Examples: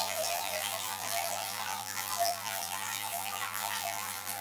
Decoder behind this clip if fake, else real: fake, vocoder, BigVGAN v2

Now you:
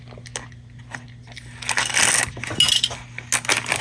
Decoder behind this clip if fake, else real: real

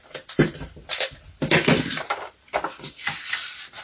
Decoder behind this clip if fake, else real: real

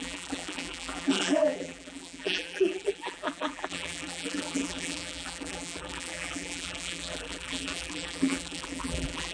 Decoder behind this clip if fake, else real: fake, vocoder, BigVGAN v2